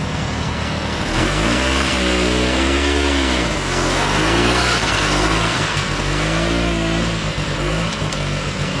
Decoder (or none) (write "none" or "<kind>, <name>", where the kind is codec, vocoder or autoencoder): codec, SNAC